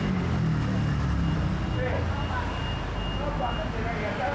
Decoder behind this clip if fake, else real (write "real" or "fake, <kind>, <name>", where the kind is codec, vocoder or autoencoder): real